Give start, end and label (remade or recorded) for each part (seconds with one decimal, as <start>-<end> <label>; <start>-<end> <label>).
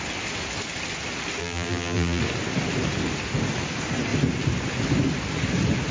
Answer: 0.0-1.4 recorded; 1.4-2.2 remade; 2.2-5.9 recorded